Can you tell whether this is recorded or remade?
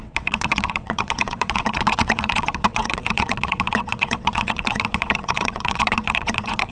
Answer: remade